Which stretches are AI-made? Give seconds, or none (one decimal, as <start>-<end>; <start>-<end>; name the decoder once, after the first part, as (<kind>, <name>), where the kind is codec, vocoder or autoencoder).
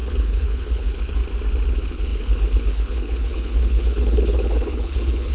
0.0-1.2 (codec, HILCodec); 1.7-5.3